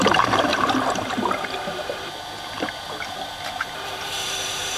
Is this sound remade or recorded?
remade